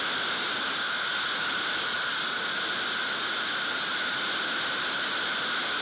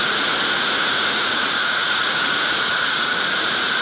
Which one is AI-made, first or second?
second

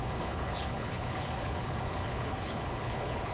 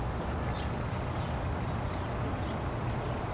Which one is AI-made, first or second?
first